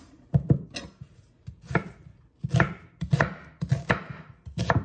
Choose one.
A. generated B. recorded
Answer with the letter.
B